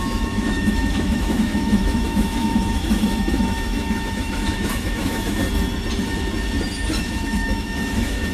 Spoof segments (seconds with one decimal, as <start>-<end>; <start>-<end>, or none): 0.0-5.4; 7.0-8.3